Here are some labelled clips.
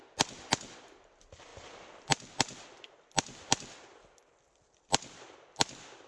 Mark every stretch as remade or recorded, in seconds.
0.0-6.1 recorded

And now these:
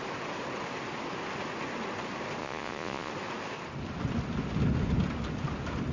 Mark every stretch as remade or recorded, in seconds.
0.0-2.4 recorded; 2.4-3.1 remade; 3.1-5.9 recorded

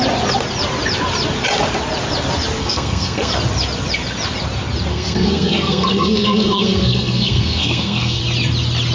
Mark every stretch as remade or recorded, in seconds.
0.0-2.6 recorded; 2.6-3.3 remade; 3.3-4.9 recorded; 4.9-8.2 remade; 8.2-8.9 recorded

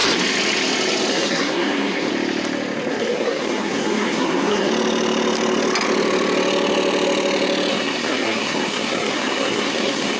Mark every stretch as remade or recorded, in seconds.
0.0-1.1 recorded; 1.1-2.1 remade; 2.1-2.9 recorded; 2.9-4.7 remade; 4.7-7.7 recorded; 7.7-10.2 remade